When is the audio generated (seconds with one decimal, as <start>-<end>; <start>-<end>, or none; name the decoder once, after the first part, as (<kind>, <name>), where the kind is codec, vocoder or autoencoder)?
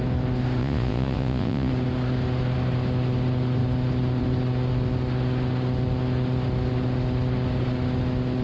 0.6-1.7 (vocoder, Vocos)